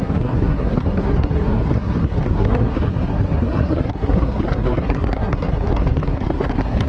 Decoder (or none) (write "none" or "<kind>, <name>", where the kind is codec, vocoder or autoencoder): codec, SNAC